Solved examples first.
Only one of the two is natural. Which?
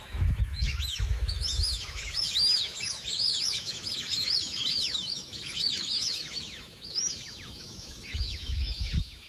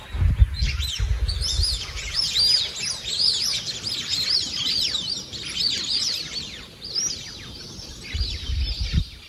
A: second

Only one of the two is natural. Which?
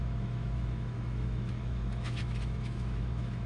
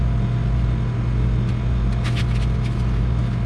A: second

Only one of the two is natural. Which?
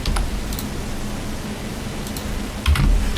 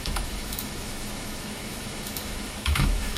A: first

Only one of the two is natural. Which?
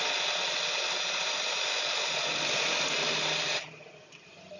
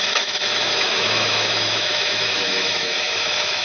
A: first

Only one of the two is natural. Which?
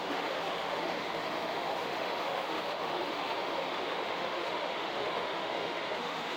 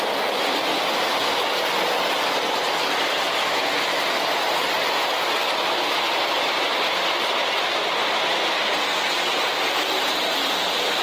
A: second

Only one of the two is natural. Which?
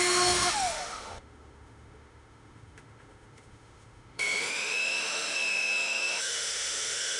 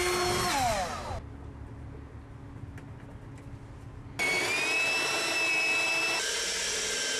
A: second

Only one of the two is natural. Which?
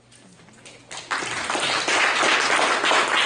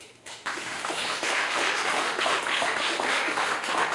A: first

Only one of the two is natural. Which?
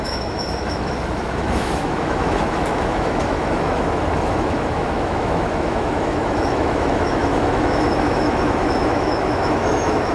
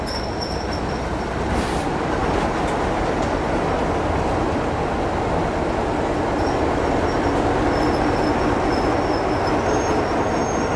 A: second